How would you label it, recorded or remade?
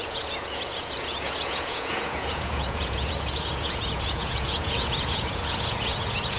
remade